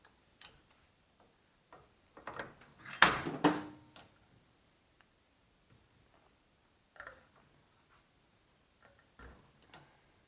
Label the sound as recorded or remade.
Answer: recorded